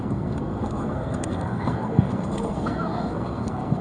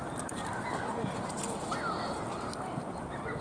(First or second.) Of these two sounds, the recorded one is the second